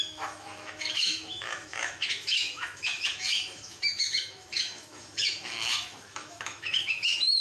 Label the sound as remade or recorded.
remade